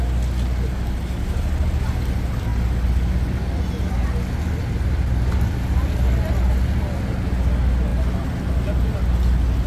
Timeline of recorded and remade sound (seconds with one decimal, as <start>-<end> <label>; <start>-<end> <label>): 0.0-9.7 recorded